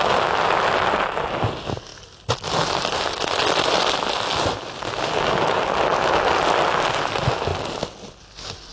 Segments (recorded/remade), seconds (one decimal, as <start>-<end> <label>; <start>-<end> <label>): 0.0-8.7 recorded